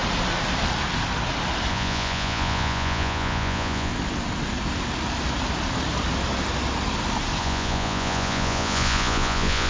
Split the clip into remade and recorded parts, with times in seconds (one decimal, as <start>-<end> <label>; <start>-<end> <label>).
0.0-1.7 recorded; 1.7-3.9 remade; 3.9-7.4 recorded; 7.4-9.7 remade